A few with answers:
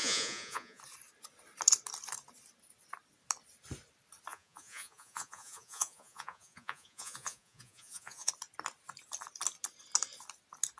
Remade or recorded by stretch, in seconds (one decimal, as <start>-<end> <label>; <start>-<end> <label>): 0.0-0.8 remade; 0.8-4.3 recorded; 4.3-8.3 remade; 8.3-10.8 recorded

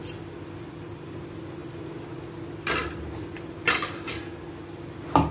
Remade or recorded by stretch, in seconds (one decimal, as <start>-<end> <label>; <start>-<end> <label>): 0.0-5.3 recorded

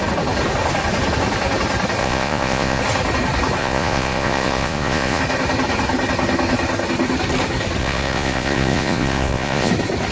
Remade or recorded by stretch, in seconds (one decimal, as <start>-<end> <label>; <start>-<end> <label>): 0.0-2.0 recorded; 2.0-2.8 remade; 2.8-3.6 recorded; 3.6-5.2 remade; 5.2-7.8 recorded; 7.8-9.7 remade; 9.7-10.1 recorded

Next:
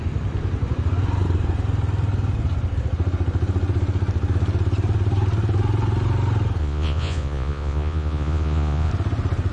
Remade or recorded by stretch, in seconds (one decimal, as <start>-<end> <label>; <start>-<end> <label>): 0.0-6.6 recorded; 6.6-8.9 remade; 8.9-9.5 recorded

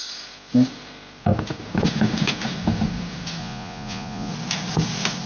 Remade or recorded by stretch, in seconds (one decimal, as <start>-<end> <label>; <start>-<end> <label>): 0.0-3.4 recorded; 3.4-4.3 remade; 4.3-5.3 recorded